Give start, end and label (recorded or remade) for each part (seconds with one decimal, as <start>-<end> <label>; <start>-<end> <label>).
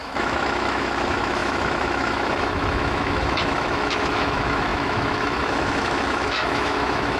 0.0-7.2 remade